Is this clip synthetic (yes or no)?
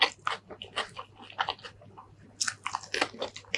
no